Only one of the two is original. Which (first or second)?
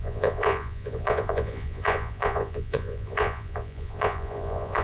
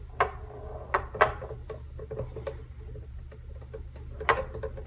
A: second